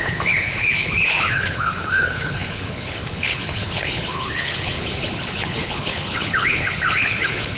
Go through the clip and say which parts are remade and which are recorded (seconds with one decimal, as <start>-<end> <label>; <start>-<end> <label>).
0.0-7.6 remade